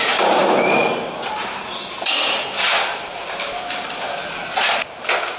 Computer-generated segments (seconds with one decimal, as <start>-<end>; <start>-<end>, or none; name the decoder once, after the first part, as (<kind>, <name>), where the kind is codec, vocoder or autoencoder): none